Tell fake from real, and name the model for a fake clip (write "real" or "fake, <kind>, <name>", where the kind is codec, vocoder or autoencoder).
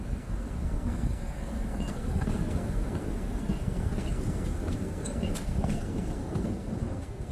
fake, codec, SNAC